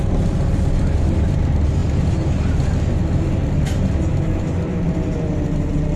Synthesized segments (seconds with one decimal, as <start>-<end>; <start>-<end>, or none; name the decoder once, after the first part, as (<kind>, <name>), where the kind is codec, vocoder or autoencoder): none